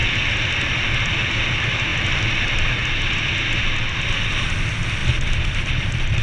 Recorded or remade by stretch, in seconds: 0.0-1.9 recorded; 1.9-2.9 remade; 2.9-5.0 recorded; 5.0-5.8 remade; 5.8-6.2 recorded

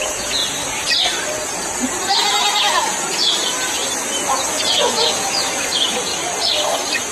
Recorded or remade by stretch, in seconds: 0.0-0.4 remade; 0.4-2.2 recorded; 2.2-3.8 remade; 3.8-4.5 recorded; 4.5-6.1 remade; 6.1-7.1 recorded

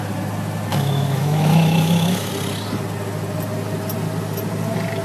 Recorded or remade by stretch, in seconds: 0.0-0.7 recorded; 0.7-2.3 remade; 2.3-5.0 recorded

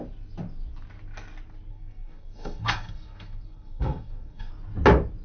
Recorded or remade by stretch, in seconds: 0.0-1.7 recorded; 1.7-4.5 remade; 4.5-5.2 recorded

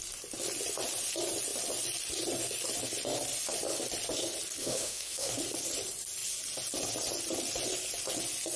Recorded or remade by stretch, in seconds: 0.0-4.6 recorded; 4.6-5.3 remade; 5.3-8.6 recorded

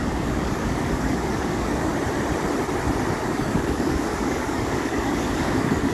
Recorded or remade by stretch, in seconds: 0.0-1.9 remade; 1.9-3.2 recorded; 3.2-5.9 remade